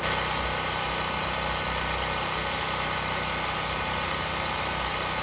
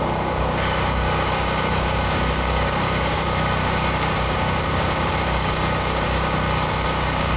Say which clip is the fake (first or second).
second